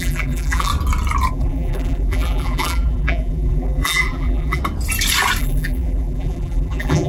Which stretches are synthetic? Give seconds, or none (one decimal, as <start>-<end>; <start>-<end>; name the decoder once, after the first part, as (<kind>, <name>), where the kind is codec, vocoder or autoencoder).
0.0-0.7 (vocoder, BigVGAN v2); 1.3-4.6; 5.4-7.1